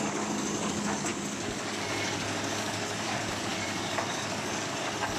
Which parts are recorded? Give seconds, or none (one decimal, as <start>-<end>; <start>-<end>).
none